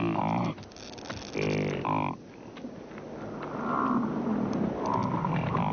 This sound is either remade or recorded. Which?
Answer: recorded